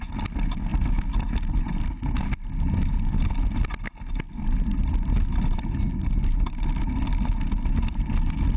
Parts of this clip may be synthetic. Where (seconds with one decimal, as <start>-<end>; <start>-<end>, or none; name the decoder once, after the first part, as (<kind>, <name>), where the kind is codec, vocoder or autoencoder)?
none